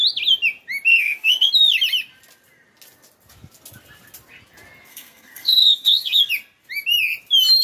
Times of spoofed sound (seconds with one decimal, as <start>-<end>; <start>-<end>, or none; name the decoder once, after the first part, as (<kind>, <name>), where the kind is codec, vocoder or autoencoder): 0.9-1.5 (codec, SNAC); 4.9-6.3